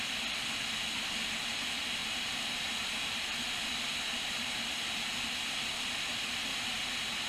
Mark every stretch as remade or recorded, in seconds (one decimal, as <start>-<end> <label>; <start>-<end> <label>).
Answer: 0.0-6.5 recorded; 6.5-7.3 remade